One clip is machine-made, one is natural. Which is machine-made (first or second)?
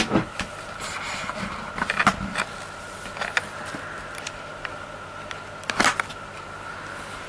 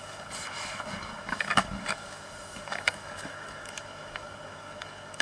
second